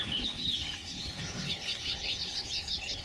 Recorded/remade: remade